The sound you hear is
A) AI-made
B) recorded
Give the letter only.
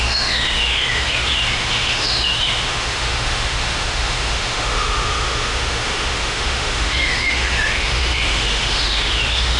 A